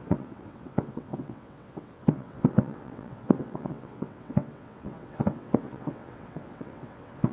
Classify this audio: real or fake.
fake